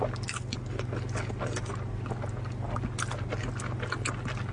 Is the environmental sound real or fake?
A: real